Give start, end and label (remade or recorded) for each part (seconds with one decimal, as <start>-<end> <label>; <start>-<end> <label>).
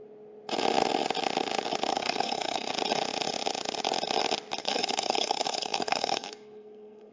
0.0-1.9 recorded; 1.9-2.7 remade; 2.7-4.6 recorded; 4.6-7.1 remade